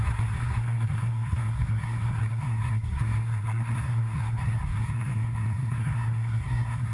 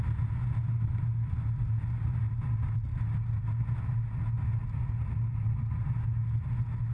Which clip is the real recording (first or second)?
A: second